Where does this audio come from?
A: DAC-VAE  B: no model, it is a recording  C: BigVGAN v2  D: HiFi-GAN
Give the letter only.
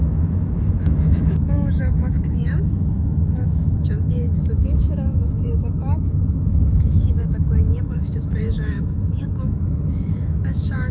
A